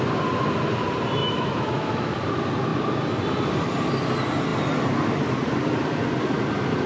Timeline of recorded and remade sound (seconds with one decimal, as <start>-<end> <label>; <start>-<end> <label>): 0.0-1.2 recorded; 1.2-2.1 remade; 2.1-6.9 recorded